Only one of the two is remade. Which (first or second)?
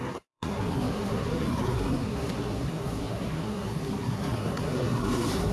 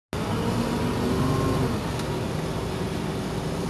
first